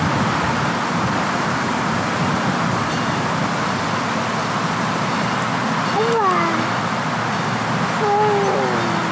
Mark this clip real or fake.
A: real